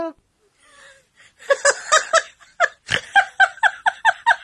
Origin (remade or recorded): recorded